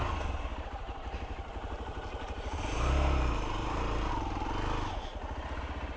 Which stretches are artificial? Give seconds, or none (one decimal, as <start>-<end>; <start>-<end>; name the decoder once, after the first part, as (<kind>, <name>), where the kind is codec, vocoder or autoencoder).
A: 0.5-4.1 (vocoder, BigVGAN v2); 5.1-5.6